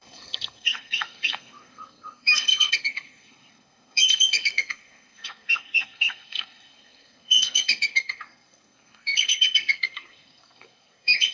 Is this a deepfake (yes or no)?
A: yes